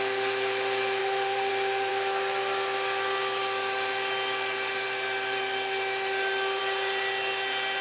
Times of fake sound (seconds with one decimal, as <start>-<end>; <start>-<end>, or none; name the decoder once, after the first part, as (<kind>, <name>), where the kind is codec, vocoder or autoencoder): 1.0-1.5 (vocoder, BigVGAN v2)